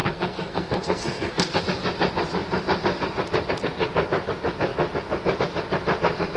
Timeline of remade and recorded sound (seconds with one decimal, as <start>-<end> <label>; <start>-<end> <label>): 0.0-1.6 remade; 1.6-6.4 recorded